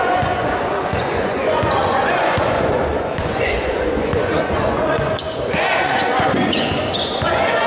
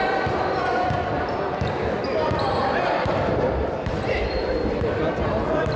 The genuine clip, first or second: second